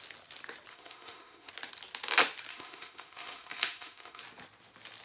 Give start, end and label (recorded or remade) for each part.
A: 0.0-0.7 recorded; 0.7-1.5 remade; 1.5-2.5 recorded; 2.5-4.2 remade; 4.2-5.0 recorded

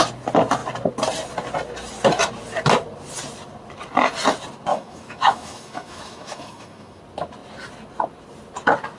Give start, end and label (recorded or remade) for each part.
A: 0.0-4.7 recorded; 4.7-7.0 remade; 7.0-9.0 recorded

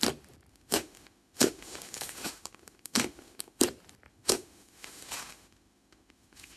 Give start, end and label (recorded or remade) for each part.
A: 0.0-0.5 recorded; 0.5-3.6 remade; 3.6-4.1 recorded; 4.1-6.6 remade

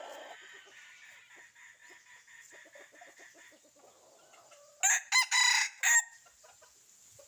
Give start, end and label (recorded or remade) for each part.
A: 0.0-7.3 recorded

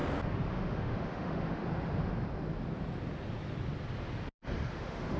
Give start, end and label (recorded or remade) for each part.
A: 0.0-0.5 recorded; 0.5-1.6 remade; 1.6-4.7 recorded; 4.7-5.2 remade

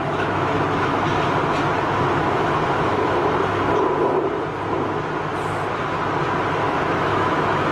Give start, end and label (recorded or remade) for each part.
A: 0.0-0.9 remade; 0.9-2.3 recorded; 2.3-3.2 remade; 3.2-6.6 recorded; 6.6-7.7 remade